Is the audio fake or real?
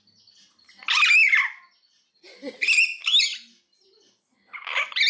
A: real